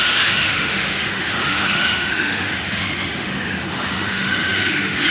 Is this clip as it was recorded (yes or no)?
no